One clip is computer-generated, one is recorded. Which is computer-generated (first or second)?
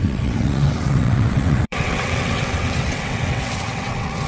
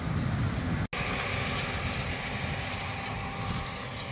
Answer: first